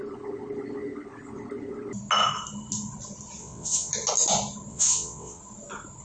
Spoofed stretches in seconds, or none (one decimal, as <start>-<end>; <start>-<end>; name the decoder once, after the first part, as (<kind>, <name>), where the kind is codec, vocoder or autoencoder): 3.4-3.9 (vocoder, WaveNeXt); 4.7-5.4